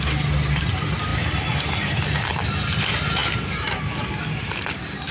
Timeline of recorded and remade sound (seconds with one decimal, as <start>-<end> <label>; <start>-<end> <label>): 0.0-5.1 recorded